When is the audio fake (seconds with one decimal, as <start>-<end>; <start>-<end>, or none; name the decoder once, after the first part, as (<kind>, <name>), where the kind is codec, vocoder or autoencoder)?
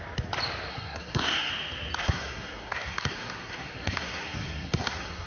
0.7-1.5 (codec, SNAC); 2.0-5.3